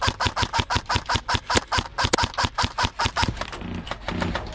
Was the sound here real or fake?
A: real